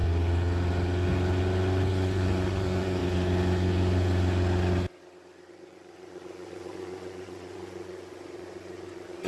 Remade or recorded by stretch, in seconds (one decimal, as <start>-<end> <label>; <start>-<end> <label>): 0.0-1.9 recorded; 1.9-3.0 remade; 3.0-5.5 recorded; 5.5-9.3 remade